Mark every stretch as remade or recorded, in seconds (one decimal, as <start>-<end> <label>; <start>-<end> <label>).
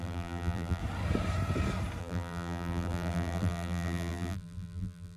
0.0-0.8 remade; 0.8-2.0 recorded; 2.0-5.2 remade